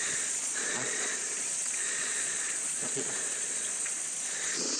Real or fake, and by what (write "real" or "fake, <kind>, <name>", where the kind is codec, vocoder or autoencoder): fake, vocoder, Vocos